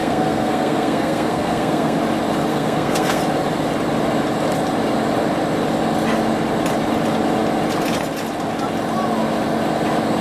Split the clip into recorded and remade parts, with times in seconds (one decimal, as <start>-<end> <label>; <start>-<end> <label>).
0.0-2.0 remade; 2.0-2.5 recorded; 2.5-3.2 remade; 3.2-10.2 recorded